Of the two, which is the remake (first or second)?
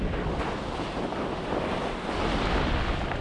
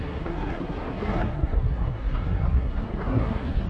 second